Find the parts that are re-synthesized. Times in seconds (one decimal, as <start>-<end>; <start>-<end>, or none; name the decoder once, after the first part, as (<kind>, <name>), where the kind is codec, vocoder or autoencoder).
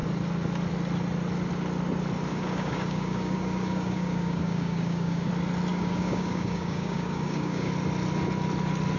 2.3-5.3 (codec, DAC); 5.7-7.7